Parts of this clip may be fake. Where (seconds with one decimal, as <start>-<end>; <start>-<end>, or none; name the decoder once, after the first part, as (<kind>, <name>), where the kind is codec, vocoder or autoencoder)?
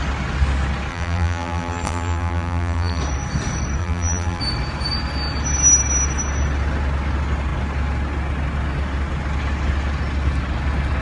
0.9-3.0 (vocoder, BigVGAN v2); 3.8-4.4